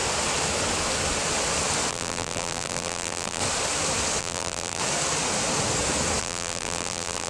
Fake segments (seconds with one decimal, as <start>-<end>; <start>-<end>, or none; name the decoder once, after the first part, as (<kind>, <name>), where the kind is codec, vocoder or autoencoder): 1.9-3.4 (vocoder, BigVGAN v2); 4.2-4.8; 6.2-7.3